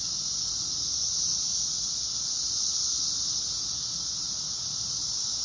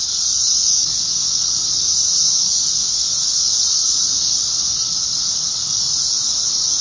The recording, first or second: first